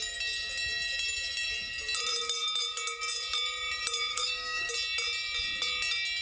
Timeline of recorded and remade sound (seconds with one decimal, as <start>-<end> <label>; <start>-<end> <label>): 0.0-4.1 recorded; 4.1-4.7 remade; 4.7-6.2 recorded